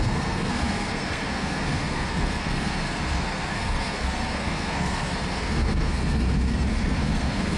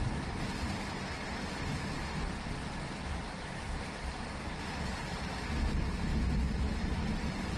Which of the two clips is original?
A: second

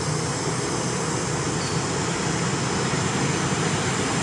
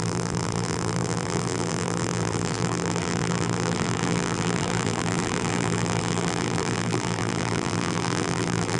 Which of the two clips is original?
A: first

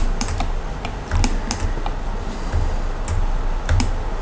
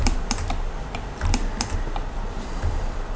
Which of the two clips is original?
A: first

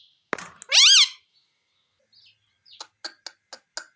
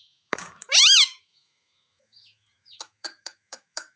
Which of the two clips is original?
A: first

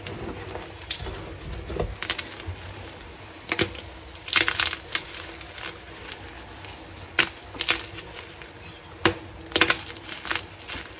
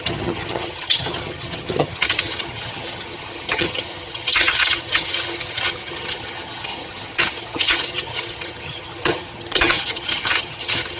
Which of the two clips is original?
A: first